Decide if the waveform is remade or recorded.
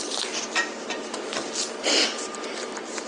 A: remade